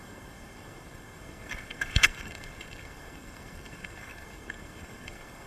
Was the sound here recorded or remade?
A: remade